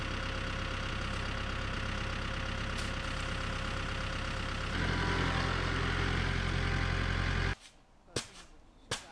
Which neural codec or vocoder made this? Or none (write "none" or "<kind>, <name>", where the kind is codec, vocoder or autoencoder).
none